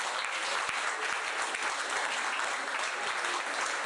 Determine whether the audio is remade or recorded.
recorded